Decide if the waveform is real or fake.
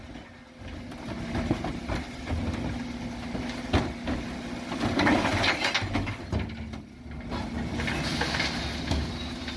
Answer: real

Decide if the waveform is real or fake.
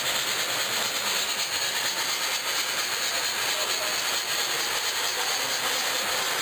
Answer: real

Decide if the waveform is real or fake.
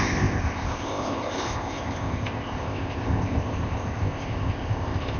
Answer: fake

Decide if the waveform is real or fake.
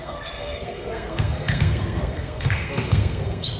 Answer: fake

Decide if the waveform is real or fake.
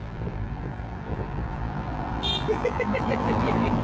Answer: fake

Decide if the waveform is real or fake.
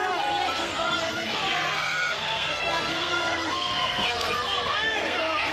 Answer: fake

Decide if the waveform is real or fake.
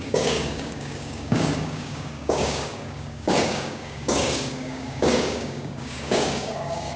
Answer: fake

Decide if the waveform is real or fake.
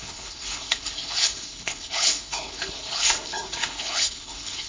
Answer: fake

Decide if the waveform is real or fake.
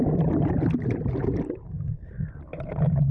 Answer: fake